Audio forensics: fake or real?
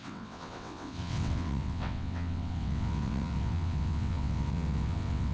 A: fake